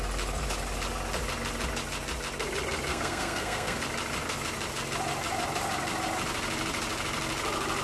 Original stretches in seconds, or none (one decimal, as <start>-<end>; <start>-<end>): 0.0-2.9; 3.8-7.8